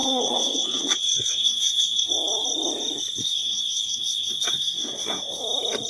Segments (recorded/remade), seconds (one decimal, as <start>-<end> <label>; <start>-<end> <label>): 0.0-2.1 remade; 2.1-3.2 recorded; 3.2-5.4 remade; 5.4-5.9 recorded